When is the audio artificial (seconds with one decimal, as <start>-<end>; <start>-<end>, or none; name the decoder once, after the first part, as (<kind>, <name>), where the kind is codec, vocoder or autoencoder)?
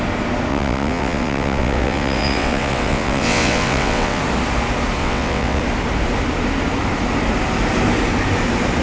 0.5-4.2 (vocoder, WaveNeXt); 5.0-5.6